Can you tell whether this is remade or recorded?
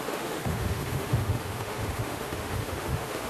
remade